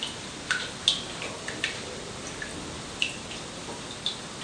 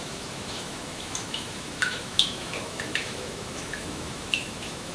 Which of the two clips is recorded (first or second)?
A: first